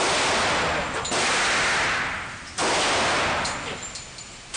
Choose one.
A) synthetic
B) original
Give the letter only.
B